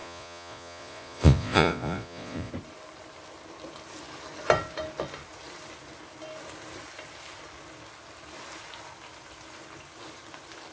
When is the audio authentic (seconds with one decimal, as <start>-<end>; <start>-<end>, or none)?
2.5-10.7